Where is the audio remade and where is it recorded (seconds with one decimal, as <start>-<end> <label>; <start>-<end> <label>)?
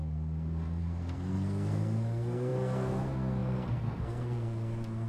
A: 0.0-5.1 remade